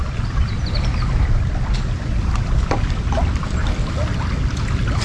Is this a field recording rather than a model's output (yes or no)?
yes